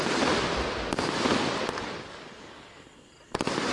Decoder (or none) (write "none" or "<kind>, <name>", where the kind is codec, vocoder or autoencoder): none